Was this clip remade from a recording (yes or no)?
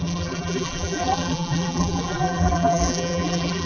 yes